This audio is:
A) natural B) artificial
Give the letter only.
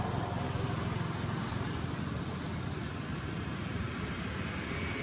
A